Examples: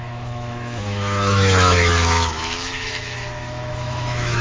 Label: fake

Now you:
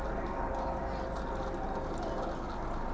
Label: real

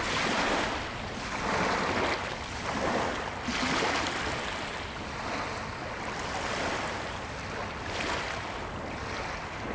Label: real